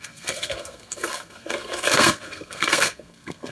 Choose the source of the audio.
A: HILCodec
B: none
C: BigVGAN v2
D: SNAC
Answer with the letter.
D